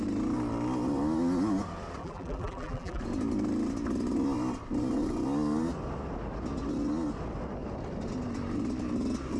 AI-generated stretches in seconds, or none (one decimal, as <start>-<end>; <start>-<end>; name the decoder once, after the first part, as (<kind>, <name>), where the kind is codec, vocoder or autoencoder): 2.0-3.0 (vocoder, BigVGAN v2)